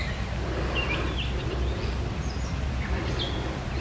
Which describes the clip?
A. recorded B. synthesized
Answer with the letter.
A